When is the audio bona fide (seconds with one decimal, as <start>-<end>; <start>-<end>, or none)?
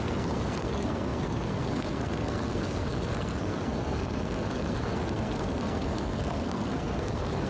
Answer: none